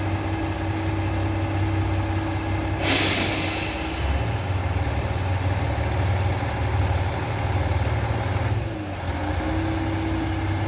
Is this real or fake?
real